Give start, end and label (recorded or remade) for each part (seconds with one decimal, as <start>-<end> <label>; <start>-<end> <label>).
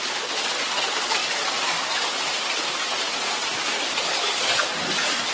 0.0-1.2 remade; 1.2-4.4 recorded; 4.4-5.3 remade